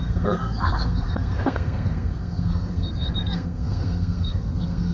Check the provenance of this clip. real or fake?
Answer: fake